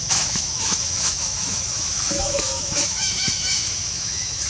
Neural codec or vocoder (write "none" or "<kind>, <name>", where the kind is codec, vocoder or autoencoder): autoencoder, DAC-VAE